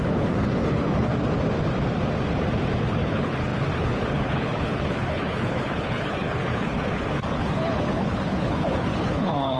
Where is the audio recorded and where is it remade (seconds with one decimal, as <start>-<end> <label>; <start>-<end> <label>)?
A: 0.0-1.1 remade; 1.1-2.8 recorded; 2.8-9.6 remade